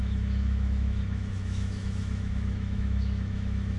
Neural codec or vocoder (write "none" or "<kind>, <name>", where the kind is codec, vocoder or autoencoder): autoencoder, DAC-VAE